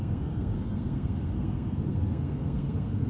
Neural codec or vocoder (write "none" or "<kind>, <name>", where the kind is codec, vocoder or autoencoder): codec, SNAC